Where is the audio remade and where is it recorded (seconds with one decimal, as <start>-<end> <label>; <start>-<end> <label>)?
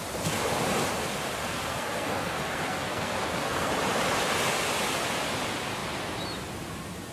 0.0-1.4 recorded; 1.4-3.7 remade; 3.7-7.1 recorded